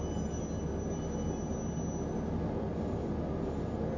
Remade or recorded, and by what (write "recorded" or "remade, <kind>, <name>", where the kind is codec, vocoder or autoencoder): recorded